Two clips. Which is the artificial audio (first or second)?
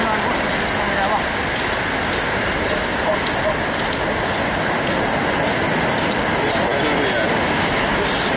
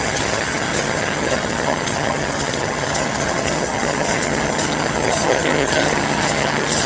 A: second